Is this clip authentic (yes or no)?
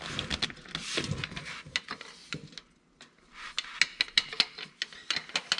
yes